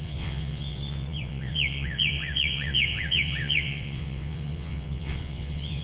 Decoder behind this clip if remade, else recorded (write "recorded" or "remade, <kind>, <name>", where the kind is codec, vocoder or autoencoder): remade, vocoder, WaveNeXt